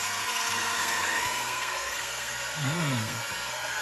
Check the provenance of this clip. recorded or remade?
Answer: remade